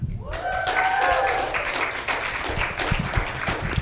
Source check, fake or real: real